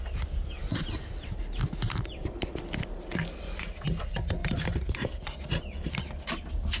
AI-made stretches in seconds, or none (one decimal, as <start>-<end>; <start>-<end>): none